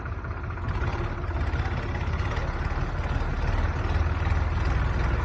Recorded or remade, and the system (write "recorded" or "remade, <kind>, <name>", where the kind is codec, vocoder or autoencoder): recorded